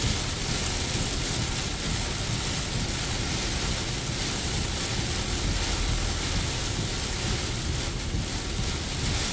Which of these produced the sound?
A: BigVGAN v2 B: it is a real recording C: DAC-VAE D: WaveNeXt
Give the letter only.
B